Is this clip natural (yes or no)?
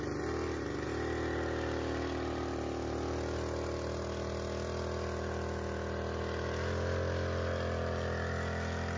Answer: yes